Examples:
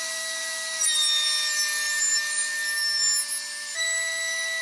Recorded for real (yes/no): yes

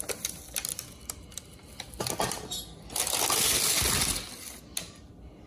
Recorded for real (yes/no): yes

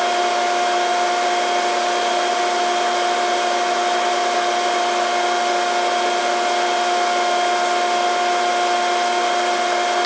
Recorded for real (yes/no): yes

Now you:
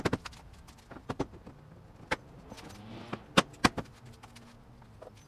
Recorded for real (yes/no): yes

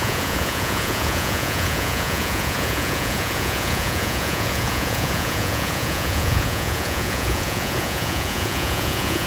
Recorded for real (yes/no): no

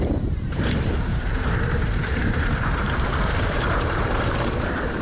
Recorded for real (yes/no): no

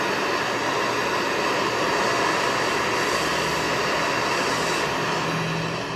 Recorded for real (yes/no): yes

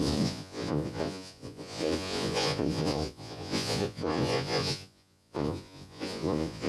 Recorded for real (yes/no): no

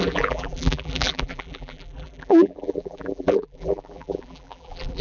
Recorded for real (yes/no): no